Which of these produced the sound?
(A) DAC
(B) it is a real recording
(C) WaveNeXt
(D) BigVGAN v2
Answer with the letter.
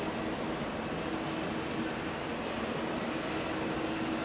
B